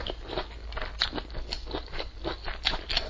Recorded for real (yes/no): yes